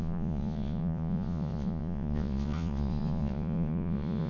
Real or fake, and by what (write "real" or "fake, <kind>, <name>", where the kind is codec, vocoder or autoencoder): fake, vocoder, Vocos